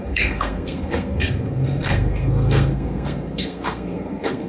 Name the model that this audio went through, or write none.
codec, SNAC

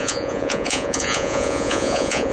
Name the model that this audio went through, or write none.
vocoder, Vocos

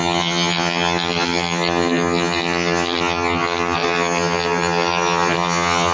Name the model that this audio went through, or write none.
vocoder, HiFi-GAN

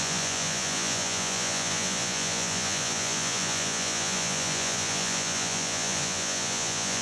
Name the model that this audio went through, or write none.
vocoder, Vocos